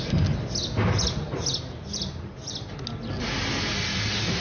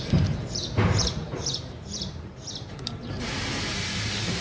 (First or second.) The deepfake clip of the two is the second